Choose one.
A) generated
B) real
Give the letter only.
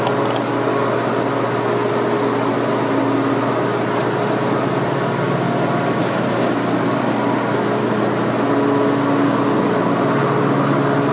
B